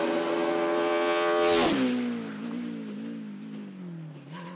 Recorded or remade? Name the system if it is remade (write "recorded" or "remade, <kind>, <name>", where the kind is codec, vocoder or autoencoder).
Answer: recorded